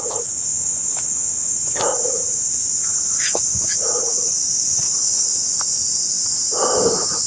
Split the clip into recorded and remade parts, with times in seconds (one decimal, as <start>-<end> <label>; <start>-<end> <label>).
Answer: 0.0-7.3 remade